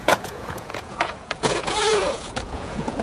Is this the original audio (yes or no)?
no